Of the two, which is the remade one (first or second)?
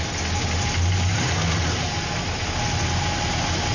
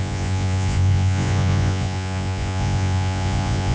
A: second